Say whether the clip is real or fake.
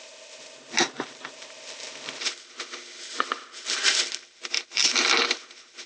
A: real